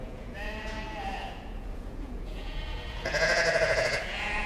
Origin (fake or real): fake